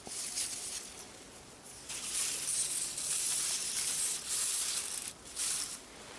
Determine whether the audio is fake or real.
real